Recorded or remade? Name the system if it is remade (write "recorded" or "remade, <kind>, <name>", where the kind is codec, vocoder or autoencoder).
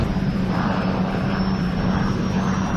remade, vocoder, BigVGAN v2